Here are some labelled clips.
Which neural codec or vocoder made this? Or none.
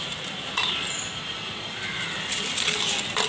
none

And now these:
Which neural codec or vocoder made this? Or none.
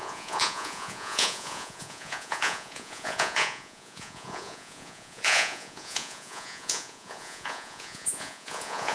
vocoder, Vocos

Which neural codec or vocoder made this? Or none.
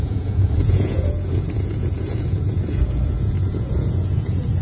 vocoder, Vocos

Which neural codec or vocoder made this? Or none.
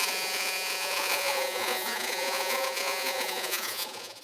vocoder, Vocos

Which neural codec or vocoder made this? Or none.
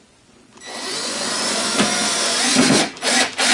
vocoder, Vocos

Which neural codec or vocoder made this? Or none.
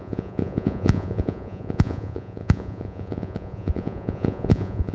vocoder, Vocos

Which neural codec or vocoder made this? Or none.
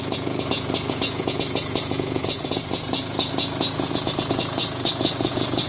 vocoder, Vocos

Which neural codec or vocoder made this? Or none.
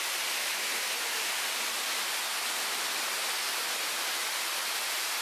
none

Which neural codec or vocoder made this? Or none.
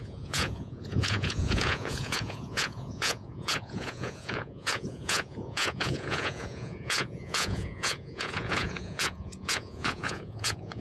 vocoder, Vocos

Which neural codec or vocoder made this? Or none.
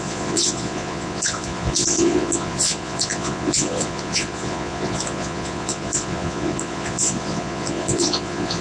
vocoder, Vocos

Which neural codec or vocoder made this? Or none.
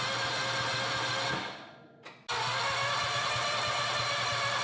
none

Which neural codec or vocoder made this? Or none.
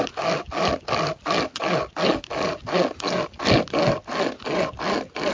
none